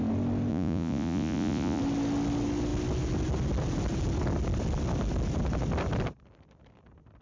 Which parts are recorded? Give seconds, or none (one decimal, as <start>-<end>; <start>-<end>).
0.0-0.5; 1.8-7.2